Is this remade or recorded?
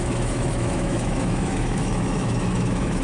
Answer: remade